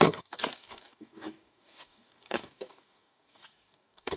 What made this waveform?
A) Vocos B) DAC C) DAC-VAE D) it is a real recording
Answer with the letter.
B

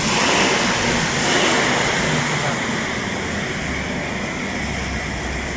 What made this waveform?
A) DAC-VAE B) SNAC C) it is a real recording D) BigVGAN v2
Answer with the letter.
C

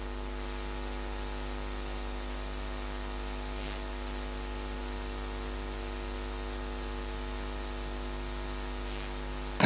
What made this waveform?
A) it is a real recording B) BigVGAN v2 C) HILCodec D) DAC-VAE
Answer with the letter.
A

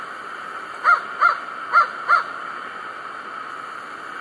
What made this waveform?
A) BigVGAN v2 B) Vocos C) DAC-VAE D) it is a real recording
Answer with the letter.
D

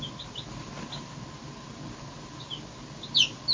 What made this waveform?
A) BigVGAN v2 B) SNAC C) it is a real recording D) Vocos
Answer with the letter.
C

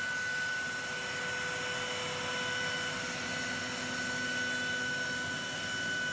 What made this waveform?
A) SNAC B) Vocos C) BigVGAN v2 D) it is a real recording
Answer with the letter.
D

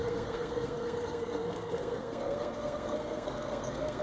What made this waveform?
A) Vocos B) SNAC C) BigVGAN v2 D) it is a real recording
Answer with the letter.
B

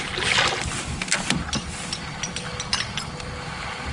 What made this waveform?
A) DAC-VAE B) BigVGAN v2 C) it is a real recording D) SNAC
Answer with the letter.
C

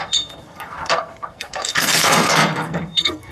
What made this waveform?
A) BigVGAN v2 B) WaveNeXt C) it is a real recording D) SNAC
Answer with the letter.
D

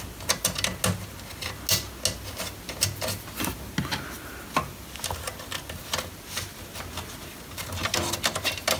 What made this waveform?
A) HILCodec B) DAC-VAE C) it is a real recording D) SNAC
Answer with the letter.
C